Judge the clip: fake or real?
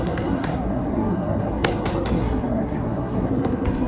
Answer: fake